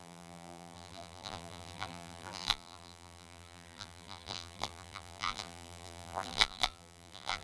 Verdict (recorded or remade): remade